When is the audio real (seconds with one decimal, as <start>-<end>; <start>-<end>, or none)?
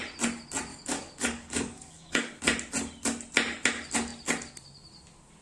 0.0-0.7; 2.4-5.4